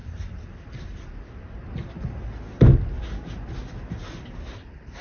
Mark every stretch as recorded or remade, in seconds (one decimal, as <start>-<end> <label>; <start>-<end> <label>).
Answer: 0.0-3.0 remade; 3.0-5.0 recorded